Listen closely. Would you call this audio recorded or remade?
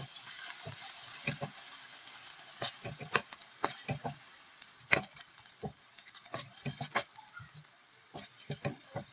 recorded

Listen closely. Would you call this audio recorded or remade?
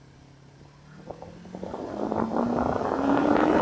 recorded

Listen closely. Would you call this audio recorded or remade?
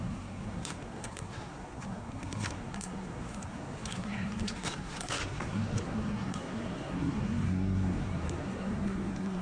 remade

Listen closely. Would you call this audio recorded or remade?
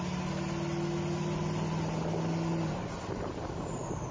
recorded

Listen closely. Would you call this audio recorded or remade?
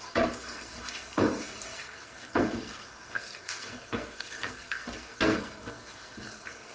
remade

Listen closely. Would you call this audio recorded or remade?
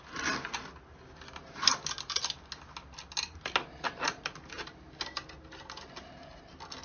recorded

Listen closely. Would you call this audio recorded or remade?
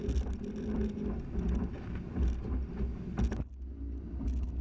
recorded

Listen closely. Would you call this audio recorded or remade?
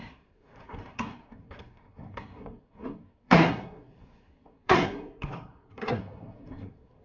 remade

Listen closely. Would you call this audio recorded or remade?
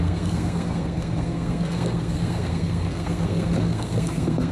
remade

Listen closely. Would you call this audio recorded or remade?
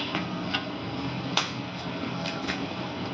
remade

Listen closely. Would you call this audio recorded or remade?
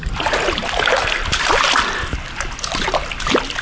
recorded